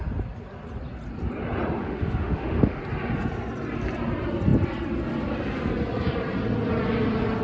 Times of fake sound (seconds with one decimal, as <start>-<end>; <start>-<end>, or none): 1.8-2.8